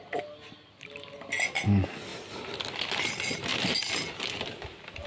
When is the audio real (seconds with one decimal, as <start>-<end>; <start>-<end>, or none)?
0.0-5.1